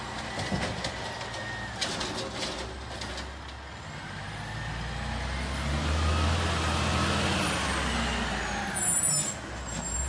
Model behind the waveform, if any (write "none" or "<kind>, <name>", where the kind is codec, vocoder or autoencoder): none